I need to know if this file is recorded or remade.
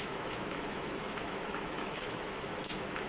remade